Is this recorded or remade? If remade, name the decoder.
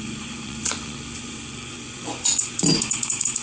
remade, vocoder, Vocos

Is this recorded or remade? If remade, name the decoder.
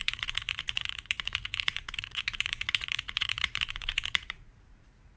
remade, vocoder, Vocos